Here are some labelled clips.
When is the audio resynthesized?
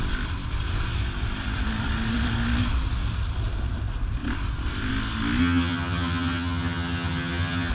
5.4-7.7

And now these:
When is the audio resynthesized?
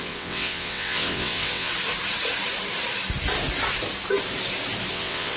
0.0-1.7; 4.9-5.4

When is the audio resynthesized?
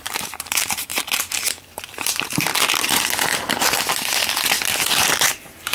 0.0-0.9; 1.5-2.5; 4.9-5.7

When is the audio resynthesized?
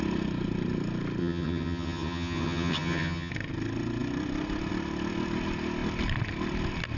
1.2-3.3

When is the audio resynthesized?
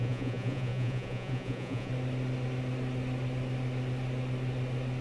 0.0-1.9